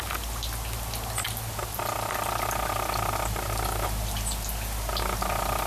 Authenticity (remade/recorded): recorded